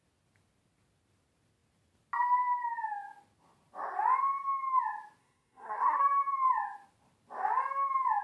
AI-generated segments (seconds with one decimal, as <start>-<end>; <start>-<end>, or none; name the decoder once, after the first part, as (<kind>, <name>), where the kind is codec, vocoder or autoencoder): 5.2-6.0 (codec, SNAC)